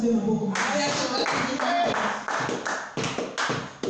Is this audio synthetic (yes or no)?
no